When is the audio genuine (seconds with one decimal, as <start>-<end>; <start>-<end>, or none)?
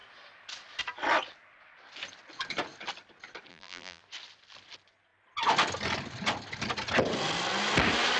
0.0-3.5; 4.0-8.2